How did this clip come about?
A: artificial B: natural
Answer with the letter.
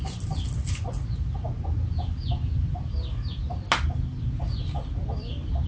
B